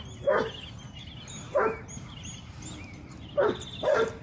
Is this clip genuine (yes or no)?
yes